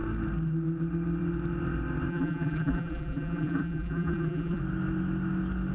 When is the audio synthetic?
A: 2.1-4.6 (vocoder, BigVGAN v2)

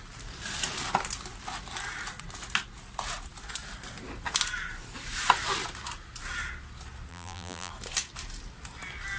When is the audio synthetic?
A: 7.1-7.7 (vocoder, BigVGAN v2)

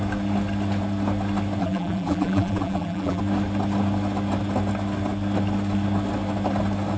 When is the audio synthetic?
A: 1.6-3.2 (vocoder, BigVGAN v2)

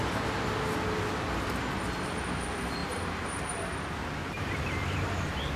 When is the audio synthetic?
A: 2.8-3.4 (vocoder, BigVGAN v2); 4.2-5.1

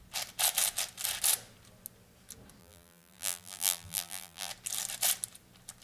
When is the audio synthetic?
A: 2.6-4.5 (vocoder, BigVGAN v2)

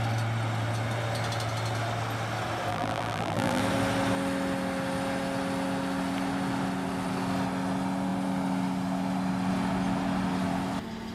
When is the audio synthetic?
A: 2.7-3.6 (vocoder, BigVGAN v2)